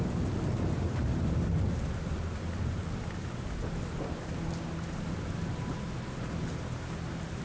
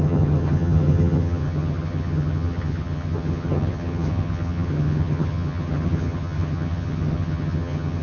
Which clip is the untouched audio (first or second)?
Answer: first